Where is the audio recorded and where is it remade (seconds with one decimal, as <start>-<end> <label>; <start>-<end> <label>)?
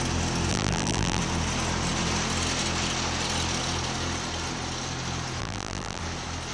0.0-0.5 recorded; 0.5-1.2 remade; 1.2-5.4 recorded; 5.4-6.0 remade; 6.0-6.5 recorded